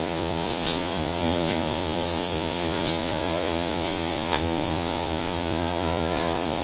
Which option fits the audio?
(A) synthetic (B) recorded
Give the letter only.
A